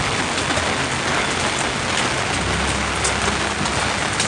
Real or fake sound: real